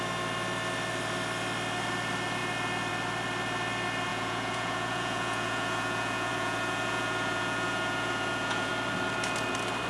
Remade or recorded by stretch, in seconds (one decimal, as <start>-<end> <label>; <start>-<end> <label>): 0.0-4.1 recorded; 4.1-8.7 remade; 8.7-9.9 recorded